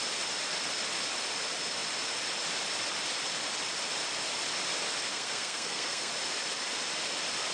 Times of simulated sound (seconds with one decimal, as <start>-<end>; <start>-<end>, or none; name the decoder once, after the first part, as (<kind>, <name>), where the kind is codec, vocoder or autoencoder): 5.1-6.1 (codec, SNAC)